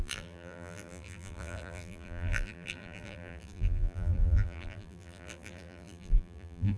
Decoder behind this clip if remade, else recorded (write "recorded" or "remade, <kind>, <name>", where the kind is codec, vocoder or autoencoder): remade, vocoder, BigVGAN v2